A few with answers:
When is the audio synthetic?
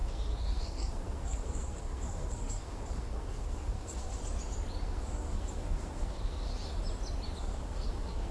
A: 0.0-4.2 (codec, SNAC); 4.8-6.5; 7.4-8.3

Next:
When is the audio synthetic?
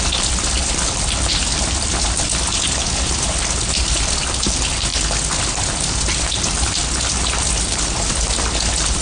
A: none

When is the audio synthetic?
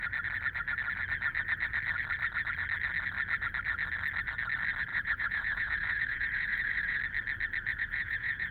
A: 4.9-7.0 (vocoder, Vocos); 7.7-8.5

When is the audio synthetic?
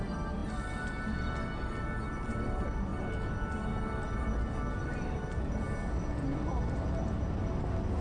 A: none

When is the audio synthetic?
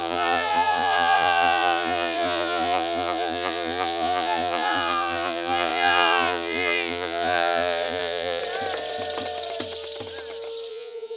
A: 0.0-8.4 (vocoder, Vocos); 10.7-11.2